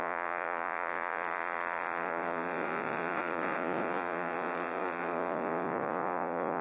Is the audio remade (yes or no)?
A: yes